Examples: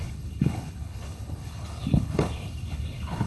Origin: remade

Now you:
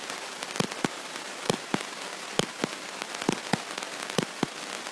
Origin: recorded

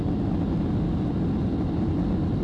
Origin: recorded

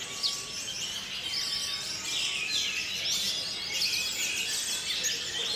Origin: recorded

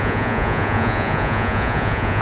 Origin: remade